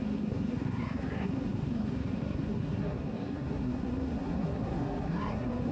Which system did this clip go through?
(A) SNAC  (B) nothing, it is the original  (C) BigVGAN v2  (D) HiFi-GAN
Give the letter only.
A